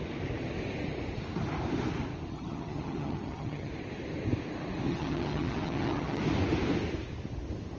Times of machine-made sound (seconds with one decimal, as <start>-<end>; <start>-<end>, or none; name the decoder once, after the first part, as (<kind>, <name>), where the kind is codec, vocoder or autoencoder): 2.3-3.7 (vocoder, HiFi-GAN); 4.9-6.2